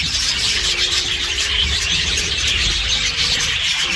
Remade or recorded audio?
remade